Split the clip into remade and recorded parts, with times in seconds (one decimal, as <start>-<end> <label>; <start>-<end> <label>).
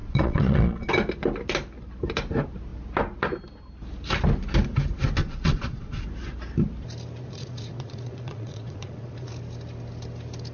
0.0-0.9 remade; 0.9-5.2 recorded; 5.2-6.0 remade; 6.0-7.2 recorded; 7.2-9.3 remade; 9.3-10.5 recorded